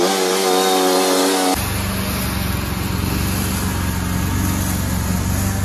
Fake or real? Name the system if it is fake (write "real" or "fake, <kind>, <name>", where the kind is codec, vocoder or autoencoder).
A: real